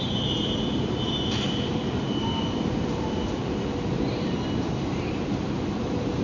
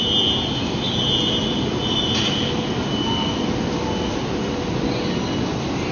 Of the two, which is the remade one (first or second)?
first